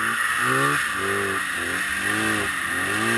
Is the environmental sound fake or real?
real